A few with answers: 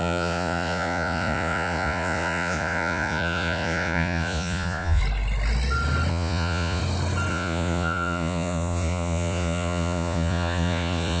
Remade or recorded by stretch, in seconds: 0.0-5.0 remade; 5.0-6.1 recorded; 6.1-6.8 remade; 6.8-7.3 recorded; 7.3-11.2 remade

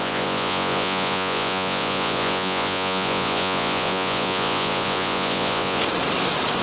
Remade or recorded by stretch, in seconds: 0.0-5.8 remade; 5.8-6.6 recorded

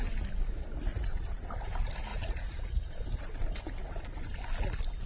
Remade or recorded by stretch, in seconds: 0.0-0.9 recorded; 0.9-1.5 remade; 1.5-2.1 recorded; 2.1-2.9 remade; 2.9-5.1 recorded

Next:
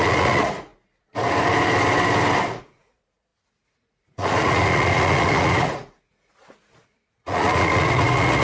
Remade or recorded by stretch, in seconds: 0.0-0.7 remade; 0.7-2.6 recorded; 2.6-8.4 remade

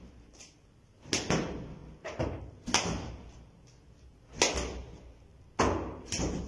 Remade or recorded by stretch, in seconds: 0.0-6.5 recorded

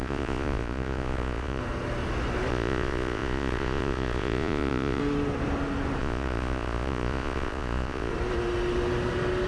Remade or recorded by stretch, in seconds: 0.0-1.6 remade; 1.6-2.5 recorded; 2.5-5.0 remade; 5.0-6.0 recorded; 6.0-8.1 remade; 8.1-9.5 recorded

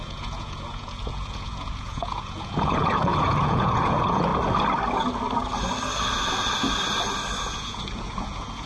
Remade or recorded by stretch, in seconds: 0.0-4.3 remade; 4.3-7.4 recorded; 7.4-8.7 remade

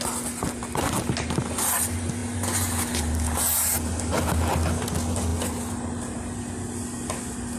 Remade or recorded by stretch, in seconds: 0.0-7.6 recorded